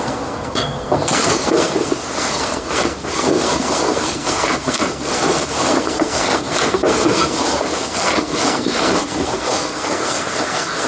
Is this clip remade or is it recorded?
remade